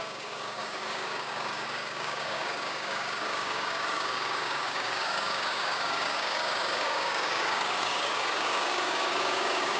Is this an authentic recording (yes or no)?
no